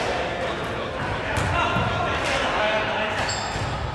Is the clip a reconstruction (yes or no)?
no